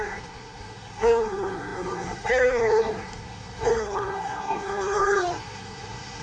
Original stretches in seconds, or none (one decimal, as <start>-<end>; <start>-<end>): none

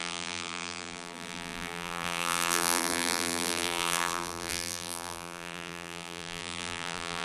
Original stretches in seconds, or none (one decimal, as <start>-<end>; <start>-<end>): none

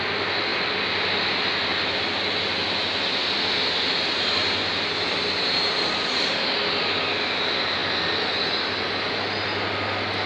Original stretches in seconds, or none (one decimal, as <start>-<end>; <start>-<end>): 0.0-10.3

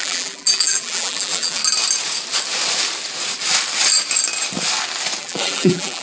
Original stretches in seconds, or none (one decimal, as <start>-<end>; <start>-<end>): 1.6-5.2

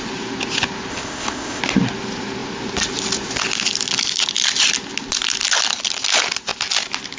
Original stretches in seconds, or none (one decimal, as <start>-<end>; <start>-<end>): 0.0-0.9; 1.6-7.2

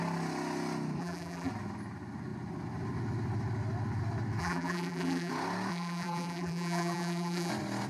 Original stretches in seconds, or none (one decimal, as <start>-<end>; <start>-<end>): 0.0-1.0; 1.5-4.4; 5.3-5.7; 7.5-7.9

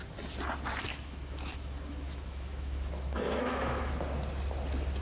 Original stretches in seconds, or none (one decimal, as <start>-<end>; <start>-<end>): 0.0-0.9; 3.9-5.0